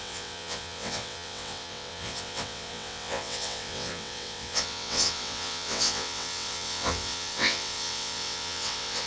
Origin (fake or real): fake